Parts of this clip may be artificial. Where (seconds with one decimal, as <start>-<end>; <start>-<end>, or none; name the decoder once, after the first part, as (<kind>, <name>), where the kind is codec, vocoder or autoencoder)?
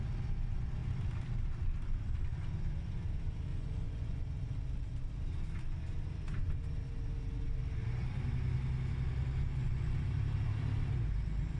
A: 3.5-4.2 (vocoder, Vocos); 9.5-10.0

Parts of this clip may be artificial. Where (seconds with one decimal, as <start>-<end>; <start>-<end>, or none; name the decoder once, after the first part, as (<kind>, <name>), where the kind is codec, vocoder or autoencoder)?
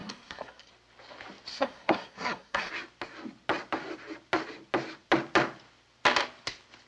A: 0.0-0.7 (codec, SNAC); 1.5-2.7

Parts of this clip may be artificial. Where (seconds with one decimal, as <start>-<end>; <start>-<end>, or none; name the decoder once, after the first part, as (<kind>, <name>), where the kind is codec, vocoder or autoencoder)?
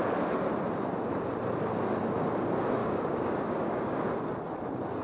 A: 2.8-4.0 (codec, DAC)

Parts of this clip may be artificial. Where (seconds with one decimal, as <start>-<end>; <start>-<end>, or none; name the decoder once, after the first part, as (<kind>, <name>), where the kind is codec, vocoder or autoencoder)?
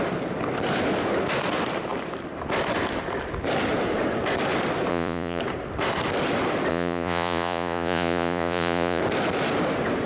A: 4.9-5.4 (vocoder, Vocos); 6.7-9.0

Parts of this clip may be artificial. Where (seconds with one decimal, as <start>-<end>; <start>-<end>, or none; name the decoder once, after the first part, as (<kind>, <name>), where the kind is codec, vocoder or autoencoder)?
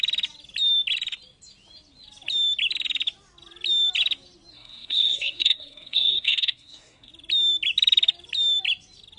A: 4.5-7.1 (codec, SNAC)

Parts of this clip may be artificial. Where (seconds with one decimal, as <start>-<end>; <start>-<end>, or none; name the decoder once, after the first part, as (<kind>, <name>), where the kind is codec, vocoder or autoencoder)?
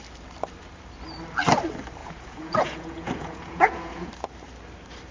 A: 2.0-4.1 (vocoder, Vocos)